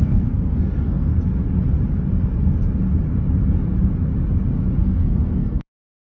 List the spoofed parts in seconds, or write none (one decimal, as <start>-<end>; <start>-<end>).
0.0-1.1; 4.8-6.1